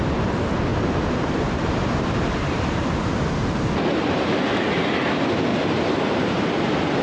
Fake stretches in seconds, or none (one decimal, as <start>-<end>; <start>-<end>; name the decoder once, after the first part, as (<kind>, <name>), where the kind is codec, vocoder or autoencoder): 0.7-3.1 (vocoder, BigVGAN v2); 5.5-6.5